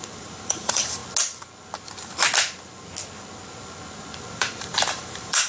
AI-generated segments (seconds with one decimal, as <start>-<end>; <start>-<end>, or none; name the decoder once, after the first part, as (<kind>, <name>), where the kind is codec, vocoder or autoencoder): 0.0-1.0 (vocoder, BigVGAN v2); 4.3-5.5